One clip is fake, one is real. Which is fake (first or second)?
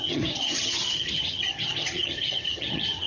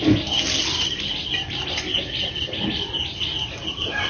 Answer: first